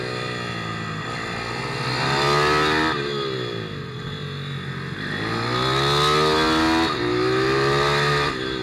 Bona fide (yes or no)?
yes